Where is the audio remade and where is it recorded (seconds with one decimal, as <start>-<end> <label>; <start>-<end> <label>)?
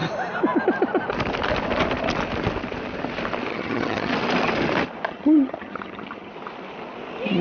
0.0-3.5 recorded; 3.5-4.1 remade; 4.1-5.1 recorded; 5.1-6.3 remade; 6.3-7.4 recorded